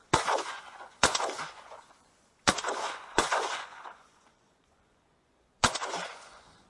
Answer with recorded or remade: remade